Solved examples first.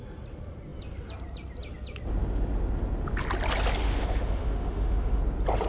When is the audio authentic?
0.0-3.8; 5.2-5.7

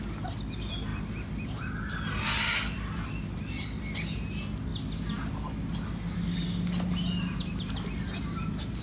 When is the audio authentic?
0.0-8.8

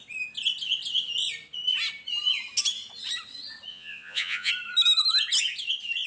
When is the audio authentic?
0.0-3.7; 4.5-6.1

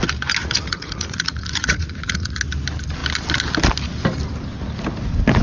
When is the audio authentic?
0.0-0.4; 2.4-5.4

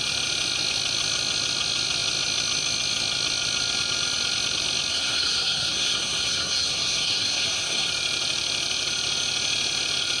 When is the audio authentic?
0.0-4.9; 7.9-10.2

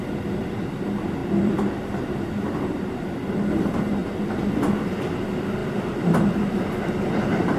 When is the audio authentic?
0.0-1.2; 1.8-7.6

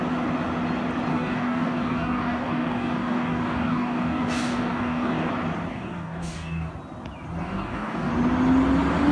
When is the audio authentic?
0.0-1.1; 5.3-5.7; 6.7-7.4; 8.1-9.1

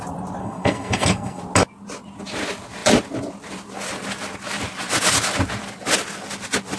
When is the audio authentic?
0.0-0.4; 1.4-6.8